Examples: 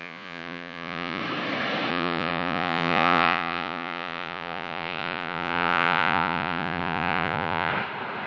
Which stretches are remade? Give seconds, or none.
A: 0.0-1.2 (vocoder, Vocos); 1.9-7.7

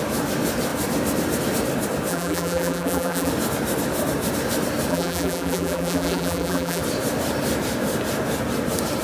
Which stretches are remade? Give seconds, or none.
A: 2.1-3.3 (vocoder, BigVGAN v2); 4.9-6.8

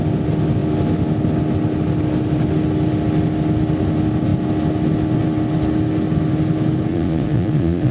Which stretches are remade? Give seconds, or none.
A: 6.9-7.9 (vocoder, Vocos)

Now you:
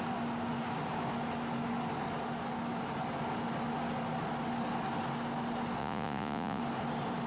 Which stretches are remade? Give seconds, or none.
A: 5.8-6.6 (vocoder, Vocos)

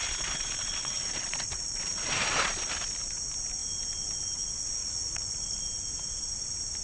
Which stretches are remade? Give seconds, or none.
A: 0.0-2.7 (vocoder, Vocos); 4.8-5.6

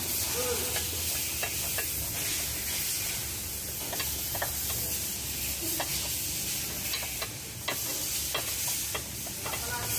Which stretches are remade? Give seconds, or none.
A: none